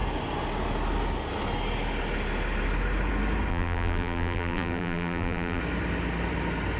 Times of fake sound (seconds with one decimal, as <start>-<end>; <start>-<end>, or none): 3.5-5.6